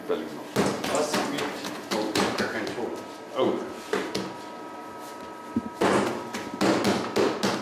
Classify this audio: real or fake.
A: real